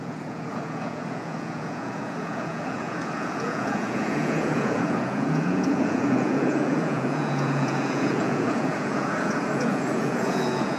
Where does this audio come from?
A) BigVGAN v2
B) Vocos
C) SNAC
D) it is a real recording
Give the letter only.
B